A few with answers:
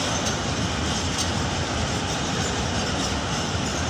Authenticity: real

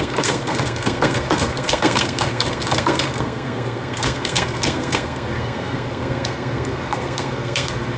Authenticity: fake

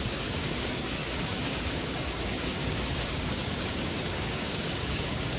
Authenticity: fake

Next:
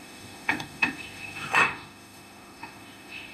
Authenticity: fake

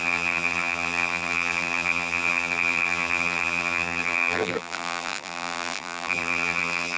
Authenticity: fake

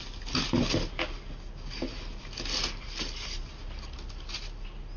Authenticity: real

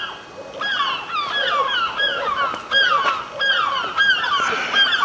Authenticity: real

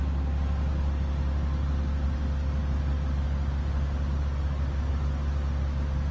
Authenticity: real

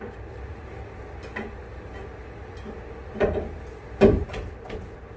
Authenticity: real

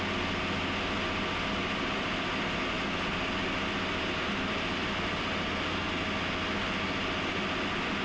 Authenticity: real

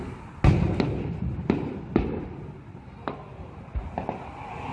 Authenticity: real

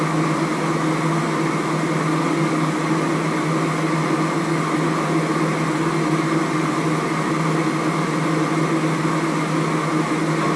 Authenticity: real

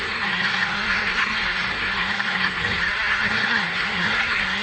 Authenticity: fake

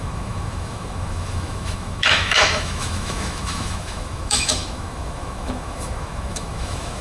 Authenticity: fake